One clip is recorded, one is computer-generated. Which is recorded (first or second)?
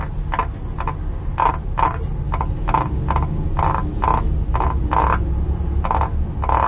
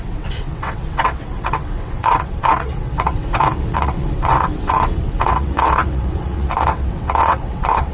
first